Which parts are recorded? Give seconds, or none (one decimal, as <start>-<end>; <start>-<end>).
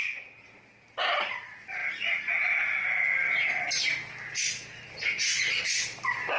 0.0-6.4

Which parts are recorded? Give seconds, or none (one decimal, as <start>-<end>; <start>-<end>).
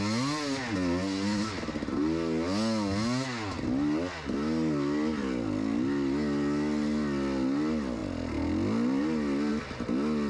0.0-10.3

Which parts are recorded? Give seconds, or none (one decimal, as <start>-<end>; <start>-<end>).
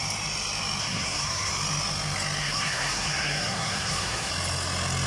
0.0-0.8; 1.5-2.4; 4.3-5.1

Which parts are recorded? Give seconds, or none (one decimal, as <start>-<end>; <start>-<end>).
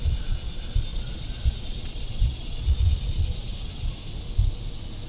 0.0-0.9; 4.0-5.1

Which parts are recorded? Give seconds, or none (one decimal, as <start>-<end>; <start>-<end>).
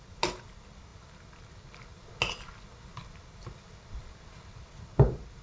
0.0-5.4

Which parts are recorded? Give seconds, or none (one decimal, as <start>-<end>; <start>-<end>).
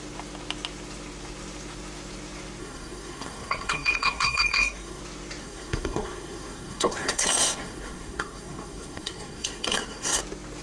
0.0-2.6; 5.0-5.4; 10.2-10.6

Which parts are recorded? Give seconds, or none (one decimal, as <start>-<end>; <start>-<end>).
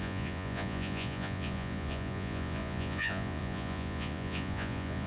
none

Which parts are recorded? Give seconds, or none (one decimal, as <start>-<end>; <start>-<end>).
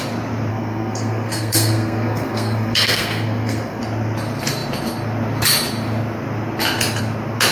0.0-0.5; 3.8-7.5